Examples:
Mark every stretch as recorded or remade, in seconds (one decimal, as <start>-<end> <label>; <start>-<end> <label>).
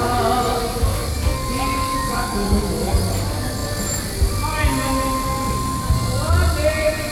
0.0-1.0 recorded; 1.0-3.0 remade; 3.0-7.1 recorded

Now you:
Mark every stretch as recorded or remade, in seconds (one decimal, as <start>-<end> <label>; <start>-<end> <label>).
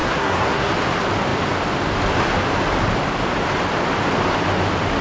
0.0-0.7 remade; 0.7-5.0 recorded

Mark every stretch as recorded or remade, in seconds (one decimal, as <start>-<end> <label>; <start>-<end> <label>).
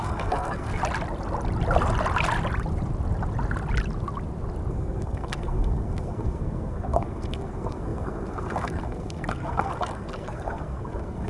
0.0-0.8 remade; 0.8-4.7 recorded; 4.7-11.3 remade